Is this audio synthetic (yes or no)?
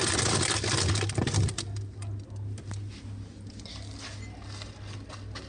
no